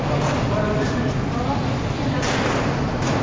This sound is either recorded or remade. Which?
recorded